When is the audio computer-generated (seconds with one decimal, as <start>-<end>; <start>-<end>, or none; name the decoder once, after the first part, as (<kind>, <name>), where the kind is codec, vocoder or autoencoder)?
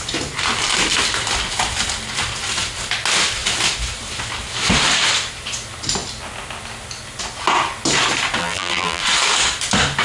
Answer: 8.4-9.0 (vocoder, BigVGAN v2)